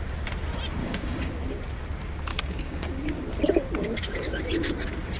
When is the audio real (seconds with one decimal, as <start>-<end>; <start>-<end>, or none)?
0.0-0.8; 1.3-2.3; 2.9-5.2